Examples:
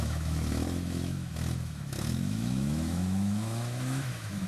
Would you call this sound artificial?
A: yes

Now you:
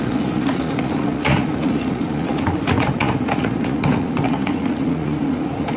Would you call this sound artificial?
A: yes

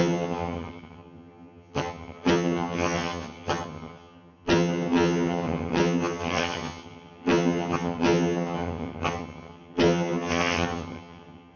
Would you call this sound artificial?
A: yes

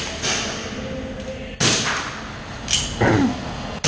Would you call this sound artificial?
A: no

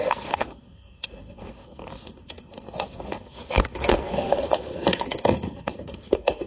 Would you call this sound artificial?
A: yes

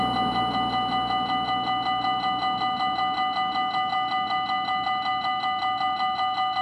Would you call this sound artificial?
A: no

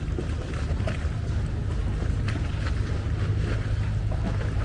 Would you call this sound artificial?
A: no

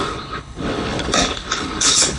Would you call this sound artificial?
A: yes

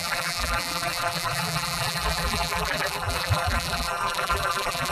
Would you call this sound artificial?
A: yes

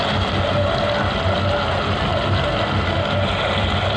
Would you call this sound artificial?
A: no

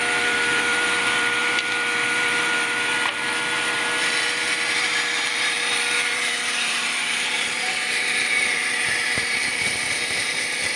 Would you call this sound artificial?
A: yes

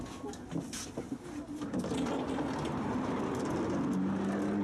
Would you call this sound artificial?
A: no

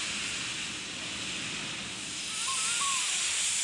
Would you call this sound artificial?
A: no